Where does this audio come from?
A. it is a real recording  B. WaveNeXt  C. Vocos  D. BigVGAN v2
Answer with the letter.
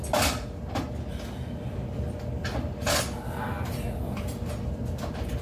A